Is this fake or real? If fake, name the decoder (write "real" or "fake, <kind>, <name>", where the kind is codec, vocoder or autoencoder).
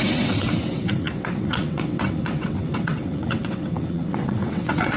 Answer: fake, vocoder, WaveNeXt